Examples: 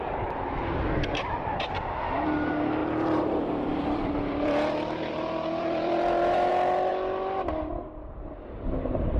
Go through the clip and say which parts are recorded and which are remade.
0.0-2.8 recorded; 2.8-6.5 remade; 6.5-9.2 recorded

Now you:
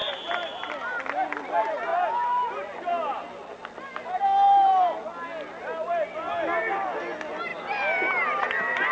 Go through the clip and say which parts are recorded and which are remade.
0.0-1.0 remade; 1.0-8.9 recorded

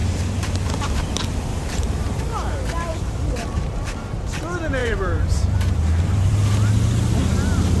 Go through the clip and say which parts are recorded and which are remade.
0.0-1.1 remade; 1.1-1.5 recorded; 1.5-2.2 remade; 2.2-4.8 recorded; 4.8-6.4 remade; 6.4-7.8 recorded

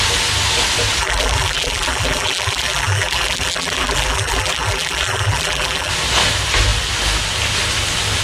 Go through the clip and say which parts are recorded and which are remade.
0.0-1.0 recorded; 1.0-5.9 remade; 5.9-8.2 recorded

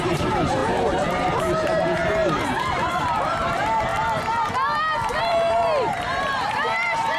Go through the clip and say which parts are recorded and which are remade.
0.0-3.9 remade; 3.9-5.2 recorded; 5.2-7.2 remade